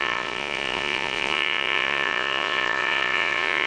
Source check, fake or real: fake